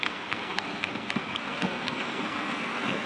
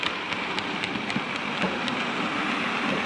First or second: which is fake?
first